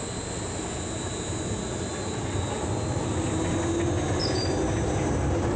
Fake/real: real